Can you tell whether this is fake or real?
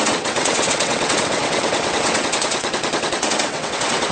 fake